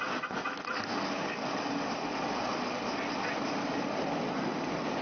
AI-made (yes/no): no